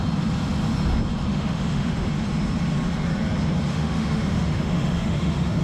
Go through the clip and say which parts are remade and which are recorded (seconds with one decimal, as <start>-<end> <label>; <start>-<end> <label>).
0.0-1.3 recorded; 1.3-2.1 remade; 2.1-3.7 recorded; 3.7-5.6 remade